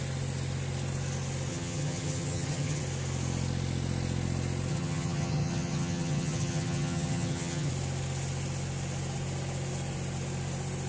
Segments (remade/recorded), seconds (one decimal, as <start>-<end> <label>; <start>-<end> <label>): 0.0-1.5 recorded; 1.5-2.8 remade; 2.8-4.7 recorded; 4.7-7.7 remade; 7.7-10.9 recorded